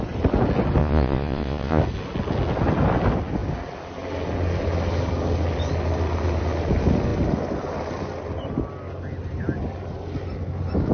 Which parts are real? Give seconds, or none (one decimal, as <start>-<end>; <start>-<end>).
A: 0.0-0.8; 1.8-10.9